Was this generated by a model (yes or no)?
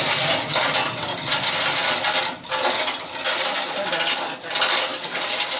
no